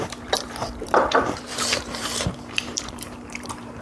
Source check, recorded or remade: remade